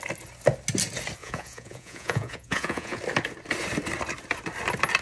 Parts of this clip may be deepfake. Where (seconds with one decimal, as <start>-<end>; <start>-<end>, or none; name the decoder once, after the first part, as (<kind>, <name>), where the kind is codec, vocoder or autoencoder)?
1.2-3.0 (vocoder, Vocos)